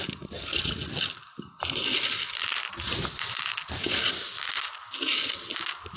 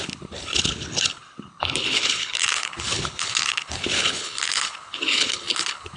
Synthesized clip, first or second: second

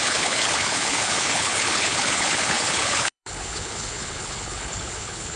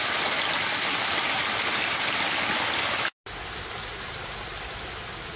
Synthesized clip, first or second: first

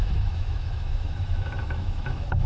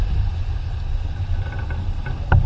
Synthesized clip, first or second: first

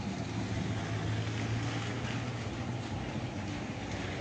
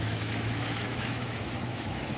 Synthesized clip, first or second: second